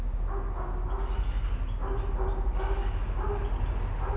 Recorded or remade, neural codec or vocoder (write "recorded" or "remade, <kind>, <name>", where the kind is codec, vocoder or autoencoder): recorded